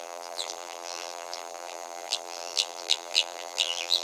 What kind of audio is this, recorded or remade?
remade